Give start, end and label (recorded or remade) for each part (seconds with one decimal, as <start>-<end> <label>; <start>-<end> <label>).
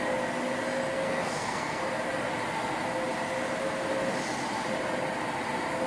0.0-0.9 recorded; 0.9-1.8 remade; 1.8-5.9 recorded